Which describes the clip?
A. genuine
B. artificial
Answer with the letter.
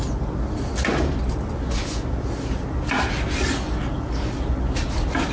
A